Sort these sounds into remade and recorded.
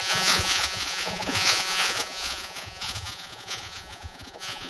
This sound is remade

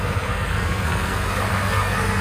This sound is remade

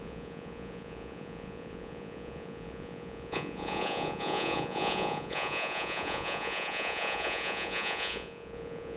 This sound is remade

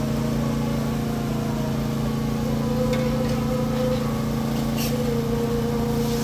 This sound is recorded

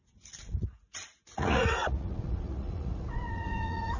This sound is remade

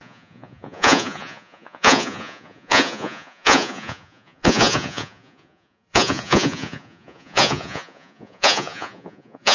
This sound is remade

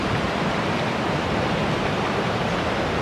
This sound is remade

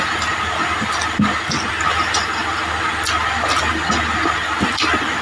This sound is recorded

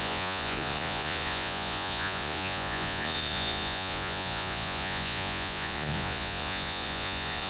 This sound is remade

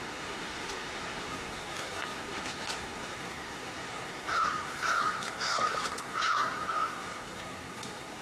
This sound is remade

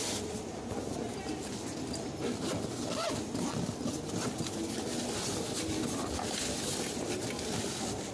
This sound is recorded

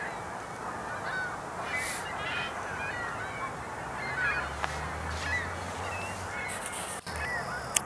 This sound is recorded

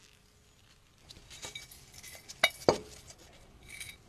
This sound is recorded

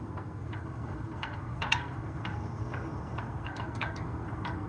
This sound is remade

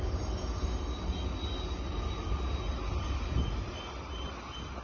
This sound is recorded